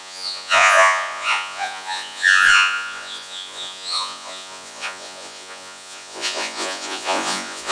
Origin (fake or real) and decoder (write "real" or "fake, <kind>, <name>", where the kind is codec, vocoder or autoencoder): fake, vocoder, Vocos